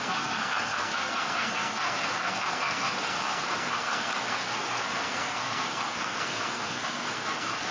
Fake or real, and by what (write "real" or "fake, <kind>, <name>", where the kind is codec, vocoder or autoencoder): fake, codec, SNAC